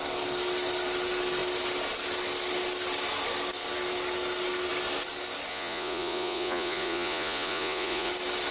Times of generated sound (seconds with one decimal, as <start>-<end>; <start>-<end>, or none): 5.5-8.1

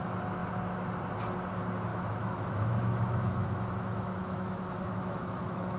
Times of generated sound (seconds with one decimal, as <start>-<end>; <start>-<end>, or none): 1.9-5.8